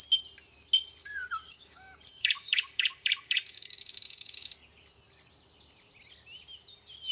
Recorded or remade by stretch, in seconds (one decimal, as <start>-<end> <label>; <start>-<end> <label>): 0.0-1.0 recorded; 1.0-4.5 remade; 4.5-7.1 recorded